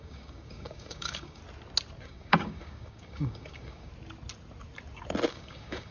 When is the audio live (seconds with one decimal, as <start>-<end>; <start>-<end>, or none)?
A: 1.4-2.0; 3.9-5.3